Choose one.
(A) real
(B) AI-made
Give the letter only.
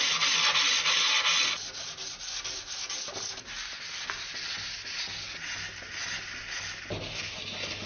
A